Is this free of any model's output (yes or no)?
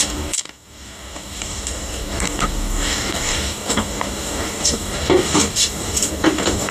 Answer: no